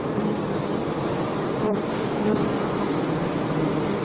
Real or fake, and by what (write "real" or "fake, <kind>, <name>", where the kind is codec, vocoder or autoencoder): fake, vocoder, BigVGAN v2